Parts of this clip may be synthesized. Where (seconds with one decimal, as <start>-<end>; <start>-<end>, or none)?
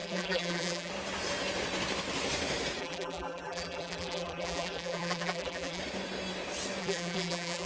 0.0-0.9; 2.8-5.8; 6.8-7.7